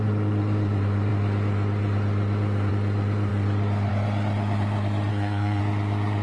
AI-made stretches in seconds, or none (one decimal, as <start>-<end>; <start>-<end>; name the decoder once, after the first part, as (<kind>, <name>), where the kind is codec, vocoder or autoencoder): 5.1-5.6 (codec, SNAC)